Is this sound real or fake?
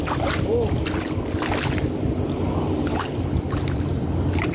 real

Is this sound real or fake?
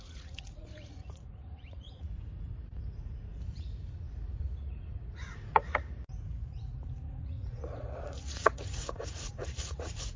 fake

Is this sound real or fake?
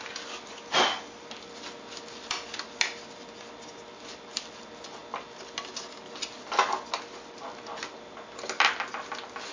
real